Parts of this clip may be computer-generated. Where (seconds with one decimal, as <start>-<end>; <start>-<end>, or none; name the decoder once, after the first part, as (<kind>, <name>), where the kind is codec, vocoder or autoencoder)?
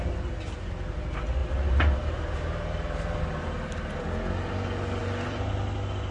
1.4-4.0 (vocoder, BigVGAN v2); 5.0-5.5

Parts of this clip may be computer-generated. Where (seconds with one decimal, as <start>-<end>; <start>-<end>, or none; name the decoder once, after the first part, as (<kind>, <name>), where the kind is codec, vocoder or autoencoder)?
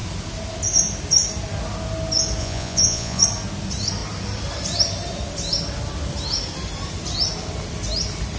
2.4-3.2 (vocoder, Vocos)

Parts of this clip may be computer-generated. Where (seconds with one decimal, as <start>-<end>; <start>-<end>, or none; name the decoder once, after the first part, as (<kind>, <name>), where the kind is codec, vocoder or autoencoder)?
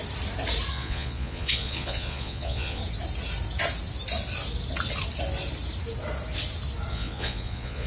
0.7-2.8 (vocoder, Vocos); 6.9-7.9